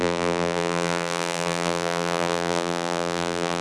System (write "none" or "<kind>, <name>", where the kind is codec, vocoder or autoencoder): vocoder, BigVGAN v2